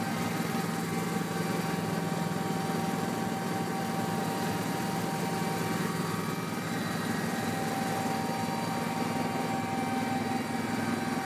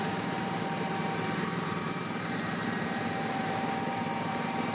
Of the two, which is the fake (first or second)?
second